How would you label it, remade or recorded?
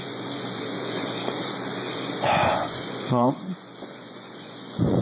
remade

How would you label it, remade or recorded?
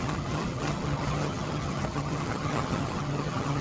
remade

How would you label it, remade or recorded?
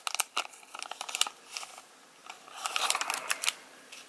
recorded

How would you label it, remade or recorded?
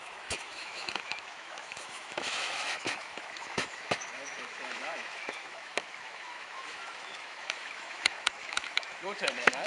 remade